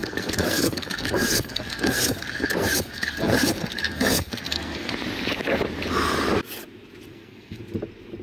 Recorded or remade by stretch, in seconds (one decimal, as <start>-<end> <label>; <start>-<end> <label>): 0.0-4.9 remade; 4.9-7.1 recorded; 7.1-7.6 remade; 7.6-8.2 recorded

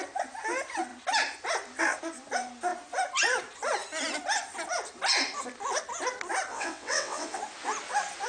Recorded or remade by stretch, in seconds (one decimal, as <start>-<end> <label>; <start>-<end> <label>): 0.0-6.5 recorded; 6.5-7.4 remade; 7.4-8.3 recorded

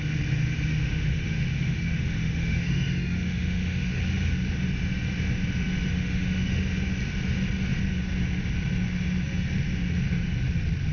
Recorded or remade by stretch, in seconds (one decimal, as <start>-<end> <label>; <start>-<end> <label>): 0.0-0.7 recorded; 0.7-4.0 remade; 4.0-5.9 recorded; 5.9-6.6 remade; 6.6-10.9 recorded

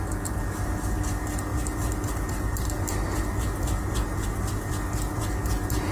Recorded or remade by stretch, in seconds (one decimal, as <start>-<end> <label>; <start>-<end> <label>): 0.0-5.9 recorded

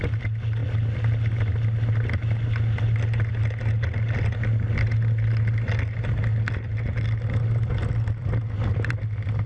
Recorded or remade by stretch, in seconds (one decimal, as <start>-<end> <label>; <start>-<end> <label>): 0.0-9.5 recorded